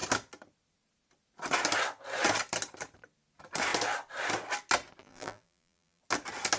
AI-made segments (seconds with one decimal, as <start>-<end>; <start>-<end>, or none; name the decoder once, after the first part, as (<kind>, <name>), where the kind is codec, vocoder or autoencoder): 5.0-6.0 (vocoder, BigVGAN v2)

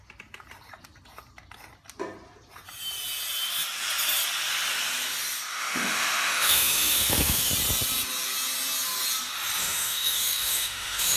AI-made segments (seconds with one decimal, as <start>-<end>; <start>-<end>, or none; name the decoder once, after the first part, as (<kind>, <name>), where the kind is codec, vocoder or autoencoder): 5.5-7.5 (autoencoder, DAC-VAE); 9.6-11.2

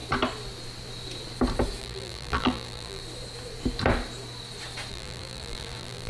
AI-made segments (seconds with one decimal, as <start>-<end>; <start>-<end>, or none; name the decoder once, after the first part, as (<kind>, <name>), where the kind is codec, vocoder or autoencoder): 1.8-3.0 (vocoder, BigVGAN v2); 4.9-6.1

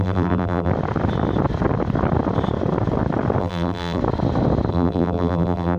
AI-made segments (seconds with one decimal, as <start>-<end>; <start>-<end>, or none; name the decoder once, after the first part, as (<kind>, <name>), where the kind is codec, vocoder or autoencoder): 0.0-0.7 (vocoder, BigVGAN v2); 3.4-4.0; 4.7-5.8

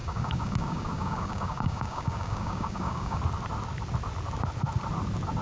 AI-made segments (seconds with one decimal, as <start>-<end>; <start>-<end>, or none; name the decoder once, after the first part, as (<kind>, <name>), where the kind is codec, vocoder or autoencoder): 0.0-3.2 (codec, DAC)

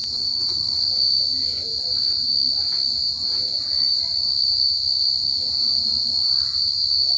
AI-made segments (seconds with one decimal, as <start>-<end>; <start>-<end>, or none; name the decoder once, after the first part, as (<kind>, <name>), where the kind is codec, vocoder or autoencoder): 0.0-0.9 (codec, DAC)

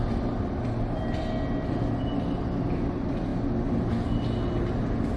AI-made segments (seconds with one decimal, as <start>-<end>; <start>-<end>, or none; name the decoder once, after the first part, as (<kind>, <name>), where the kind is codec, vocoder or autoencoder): none